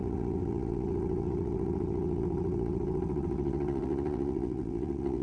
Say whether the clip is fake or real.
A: fake